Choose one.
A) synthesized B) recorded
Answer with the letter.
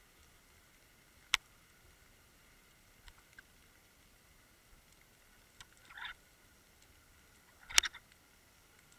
B